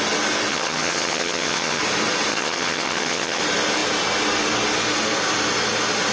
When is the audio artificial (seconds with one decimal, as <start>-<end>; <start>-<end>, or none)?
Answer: 0.5-1.8; 2.3-3.4